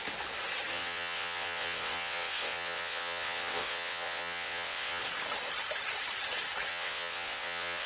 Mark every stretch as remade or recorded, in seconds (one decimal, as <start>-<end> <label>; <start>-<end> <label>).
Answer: 0.0-0.7 recorded; 0.7-5.0 remade; 5.0-6.7 recorded; 6.7-7.9 remade